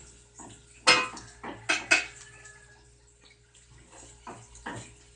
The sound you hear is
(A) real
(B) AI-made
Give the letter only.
A